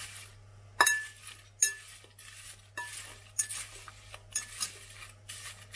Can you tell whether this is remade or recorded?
recorded